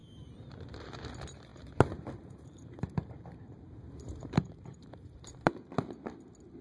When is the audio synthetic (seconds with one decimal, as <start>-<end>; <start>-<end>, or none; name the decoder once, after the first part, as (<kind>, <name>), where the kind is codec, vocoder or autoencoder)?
0.0-1.1 (vocoder, BigVGAN v2); 1.5-5.5